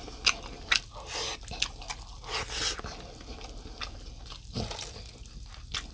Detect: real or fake real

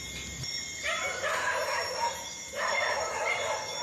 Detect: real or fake real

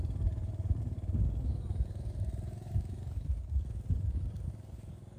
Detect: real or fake fake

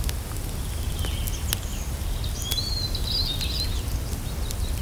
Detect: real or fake real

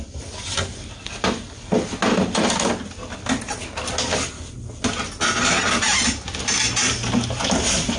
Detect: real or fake real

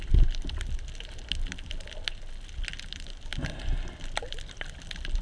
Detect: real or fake real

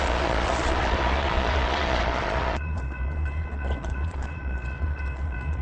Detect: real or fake fake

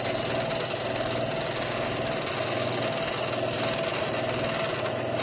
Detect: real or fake real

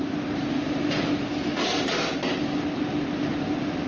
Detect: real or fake real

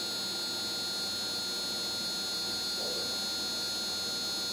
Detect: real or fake real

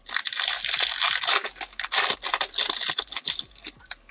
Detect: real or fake real